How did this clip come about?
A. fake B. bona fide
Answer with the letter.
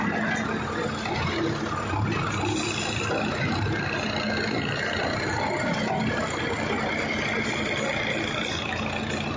B